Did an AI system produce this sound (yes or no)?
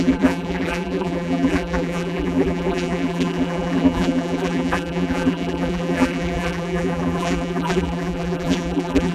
yes